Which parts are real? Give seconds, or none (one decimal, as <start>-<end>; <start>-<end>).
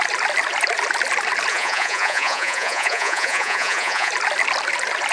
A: 0.0-1.5; 4.1-5.1